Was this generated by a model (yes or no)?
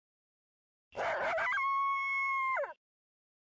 no